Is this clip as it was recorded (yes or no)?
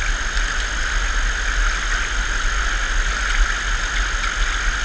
yes